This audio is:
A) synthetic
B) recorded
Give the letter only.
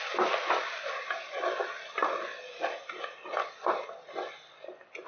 B